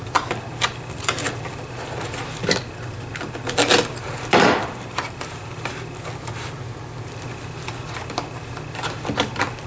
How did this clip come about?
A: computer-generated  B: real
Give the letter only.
B